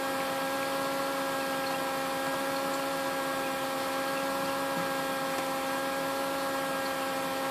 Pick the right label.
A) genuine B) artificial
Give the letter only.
B